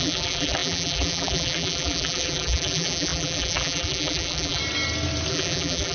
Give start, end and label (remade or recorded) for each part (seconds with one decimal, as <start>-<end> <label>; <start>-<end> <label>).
0.0-4.6 remade; 4.6-5.3 recorded; 5.3-5.9 remade